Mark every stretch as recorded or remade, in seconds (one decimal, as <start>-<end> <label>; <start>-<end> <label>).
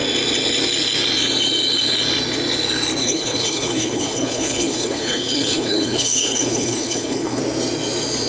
0.0-3.0 recorded; 3.0-7.4 remade; 7.4-8.3 recorded